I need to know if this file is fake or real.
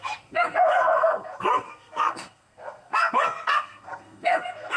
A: fake